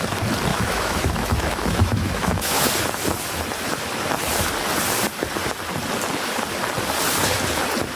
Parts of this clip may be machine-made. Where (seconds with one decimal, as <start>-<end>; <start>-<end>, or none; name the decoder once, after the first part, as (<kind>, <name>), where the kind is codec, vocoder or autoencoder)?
0.5-2.7 (autoencoder, DAC-VAE)